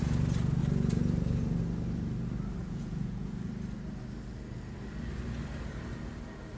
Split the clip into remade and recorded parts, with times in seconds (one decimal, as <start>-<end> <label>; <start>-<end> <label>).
0.0-2.6 recorded; 2.6-3.5 remade; 3.5-6.6 recorded